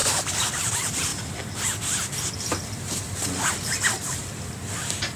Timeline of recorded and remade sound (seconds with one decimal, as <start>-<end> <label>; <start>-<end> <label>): 0.0-5.2 recorded